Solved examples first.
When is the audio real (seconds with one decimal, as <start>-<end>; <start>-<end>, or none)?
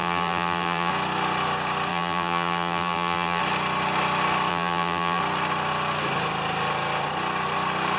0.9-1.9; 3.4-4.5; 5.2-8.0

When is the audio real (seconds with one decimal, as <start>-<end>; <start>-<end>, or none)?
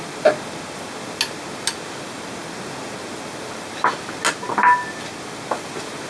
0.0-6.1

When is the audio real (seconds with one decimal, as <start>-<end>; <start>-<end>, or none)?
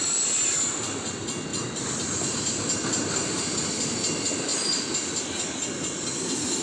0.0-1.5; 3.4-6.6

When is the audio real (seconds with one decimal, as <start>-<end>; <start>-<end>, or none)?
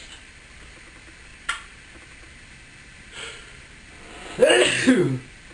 0.0-1.3; 2.0-5.5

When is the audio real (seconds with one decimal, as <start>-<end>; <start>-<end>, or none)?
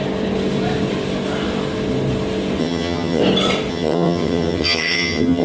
0.0-2.6; 3.2-3.7